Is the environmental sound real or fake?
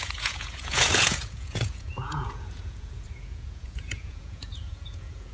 fake